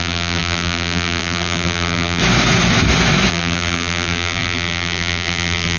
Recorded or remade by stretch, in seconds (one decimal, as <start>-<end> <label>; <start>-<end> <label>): 0.0-2.2 remade; 2.2-3.3 recorded; 3.3-5.8 remade